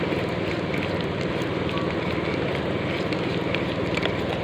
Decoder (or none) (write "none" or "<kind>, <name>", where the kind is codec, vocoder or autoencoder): none